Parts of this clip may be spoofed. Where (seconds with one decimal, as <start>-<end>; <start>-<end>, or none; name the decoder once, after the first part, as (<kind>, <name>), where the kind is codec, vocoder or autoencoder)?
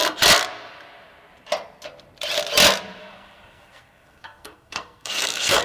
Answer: 3.0-5.6 (codec, SNAC)